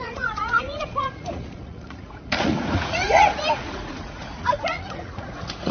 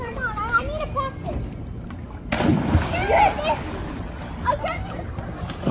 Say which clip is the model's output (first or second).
first